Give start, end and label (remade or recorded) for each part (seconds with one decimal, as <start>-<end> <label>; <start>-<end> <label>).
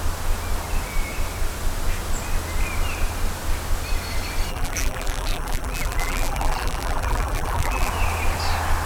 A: 0.0-4.5 recorded; 4.5-7.9 remade; 7.9-8.9 recorded